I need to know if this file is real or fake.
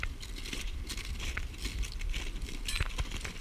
real